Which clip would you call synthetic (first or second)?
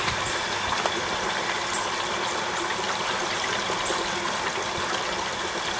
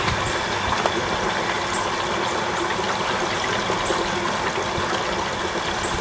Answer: first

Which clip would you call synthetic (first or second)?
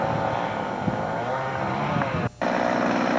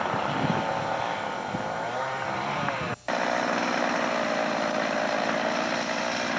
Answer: second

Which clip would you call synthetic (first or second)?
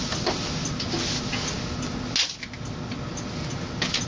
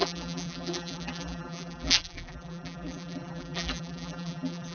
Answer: second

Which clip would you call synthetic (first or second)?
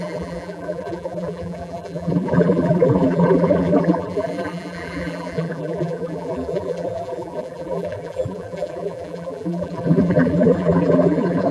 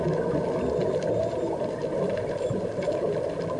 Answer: first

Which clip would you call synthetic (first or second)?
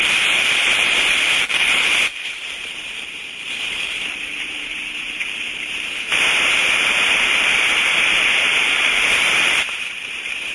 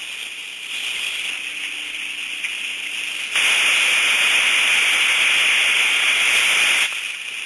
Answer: first